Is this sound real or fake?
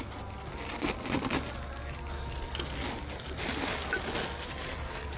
real